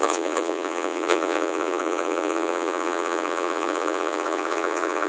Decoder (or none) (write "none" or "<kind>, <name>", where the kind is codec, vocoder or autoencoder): vocoder, Vocos